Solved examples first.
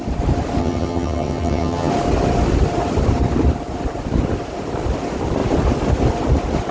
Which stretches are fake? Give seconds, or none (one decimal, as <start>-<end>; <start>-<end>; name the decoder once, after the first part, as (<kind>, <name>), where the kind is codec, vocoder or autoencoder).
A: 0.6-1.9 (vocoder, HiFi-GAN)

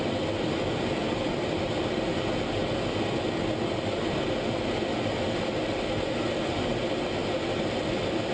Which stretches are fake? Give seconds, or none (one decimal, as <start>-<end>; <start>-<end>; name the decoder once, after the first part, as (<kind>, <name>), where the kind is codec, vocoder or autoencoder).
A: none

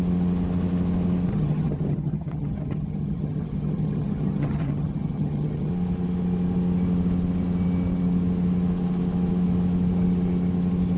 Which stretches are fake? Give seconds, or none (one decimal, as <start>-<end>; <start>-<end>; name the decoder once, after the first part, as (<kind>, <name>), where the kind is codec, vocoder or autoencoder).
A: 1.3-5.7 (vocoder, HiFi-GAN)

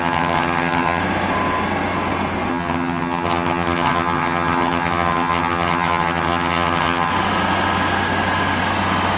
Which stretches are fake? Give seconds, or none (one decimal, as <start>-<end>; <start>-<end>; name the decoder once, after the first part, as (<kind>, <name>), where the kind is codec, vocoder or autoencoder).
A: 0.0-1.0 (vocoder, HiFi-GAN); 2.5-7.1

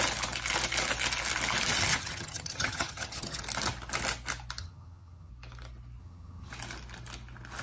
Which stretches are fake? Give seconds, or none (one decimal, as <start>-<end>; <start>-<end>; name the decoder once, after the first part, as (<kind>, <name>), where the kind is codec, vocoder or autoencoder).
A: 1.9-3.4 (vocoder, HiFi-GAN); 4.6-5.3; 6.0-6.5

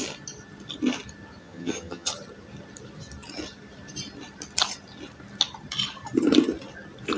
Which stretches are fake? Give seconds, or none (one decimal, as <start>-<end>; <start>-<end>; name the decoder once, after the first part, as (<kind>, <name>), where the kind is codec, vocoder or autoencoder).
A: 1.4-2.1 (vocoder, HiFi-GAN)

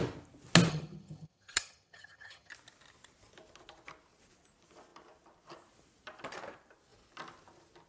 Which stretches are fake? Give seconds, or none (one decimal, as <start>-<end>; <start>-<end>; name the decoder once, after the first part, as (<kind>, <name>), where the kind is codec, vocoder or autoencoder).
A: 0.7-2.5 (vocoder, HiFi-GAN)

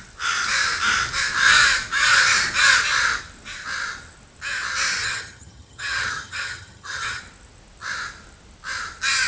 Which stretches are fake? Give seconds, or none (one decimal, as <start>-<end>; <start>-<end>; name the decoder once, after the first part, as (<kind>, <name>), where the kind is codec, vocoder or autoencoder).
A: 5.0-7.2 (vocoder, HiFi-GAN)